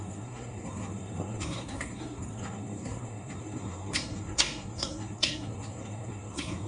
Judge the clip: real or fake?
fake